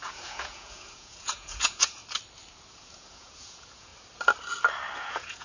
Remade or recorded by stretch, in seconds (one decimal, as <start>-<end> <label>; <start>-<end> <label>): 0.0-2.0 remade; 2.0-2.7 recorded; 2.7-3.9 remade; 3.9-5.0 recorded; 5.0-5.4 remade